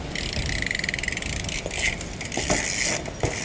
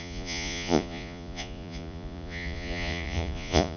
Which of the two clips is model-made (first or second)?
second